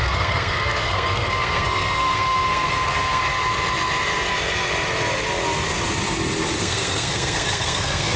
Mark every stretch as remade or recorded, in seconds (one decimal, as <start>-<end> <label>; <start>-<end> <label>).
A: 0.0-3.2 remade; 3.2-6.6 recorded; 6.6-8.2 remade